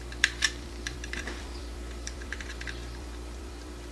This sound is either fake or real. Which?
fake